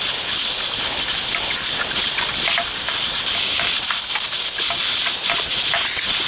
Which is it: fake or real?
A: real